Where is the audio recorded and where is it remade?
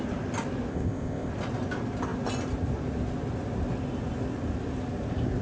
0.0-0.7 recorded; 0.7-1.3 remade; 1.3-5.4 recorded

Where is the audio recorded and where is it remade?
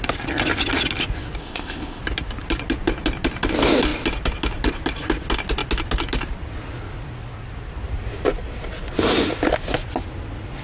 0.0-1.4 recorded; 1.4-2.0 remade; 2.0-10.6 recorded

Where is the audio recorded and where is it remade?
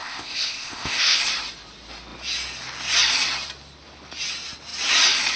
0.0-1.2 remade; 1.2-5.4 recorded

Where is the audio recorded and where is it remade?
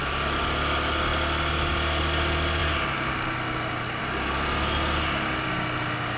0.0-6.2 recorded